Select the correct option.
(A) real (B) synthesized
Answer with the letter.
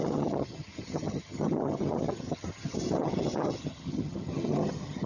B